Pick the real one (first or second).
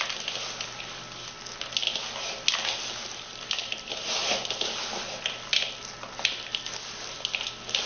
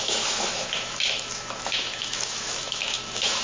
first